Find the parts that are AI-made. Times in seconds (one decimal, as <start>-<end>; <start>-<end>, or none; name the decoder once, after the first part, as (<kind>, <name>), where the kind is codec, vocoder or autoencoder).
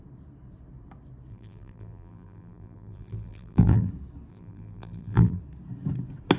1.3-3.9 (vocoder, BigVGAN v2); 4.3-5.4